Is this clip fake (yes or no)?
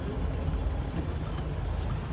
no